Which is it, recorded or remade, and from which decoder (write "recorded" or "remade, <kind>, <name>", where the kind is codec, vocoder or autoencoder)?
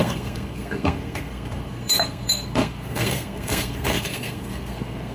remade, codec, SNAC